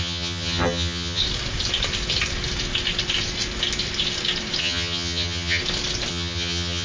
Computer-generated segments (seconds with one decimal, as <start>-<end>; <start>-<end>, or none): 0.0-1.2; 4.6-5.6; 6.1-6.8